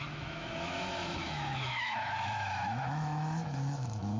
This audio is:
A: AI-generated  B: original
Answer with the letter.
A